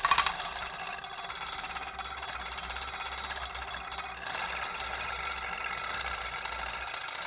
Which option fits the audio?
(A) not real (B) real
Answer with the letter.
B